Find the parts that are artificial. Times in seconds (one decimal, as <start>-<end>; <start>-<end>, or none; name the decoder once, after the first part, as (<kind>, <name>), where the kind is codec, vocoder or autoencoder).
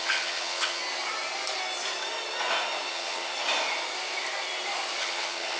0.0-0.8 (vocoder, HiFi-GAN); 2.9-3.3; 5.0-5.6